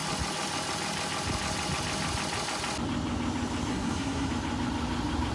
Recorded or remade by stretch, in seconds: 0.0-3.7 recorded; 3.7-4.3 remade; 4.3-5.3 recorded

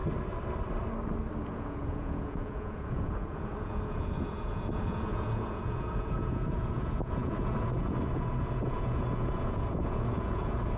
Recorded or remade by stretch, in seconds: 0.0-1.4 recorded; 1.4-10.8 remade

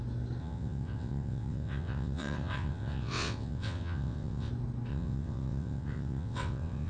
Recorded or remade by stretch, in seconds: 0.0-0.4 recorded; 0.4-4.5 remade; 4.5-4.9 recorded; 4.9-6.9 remade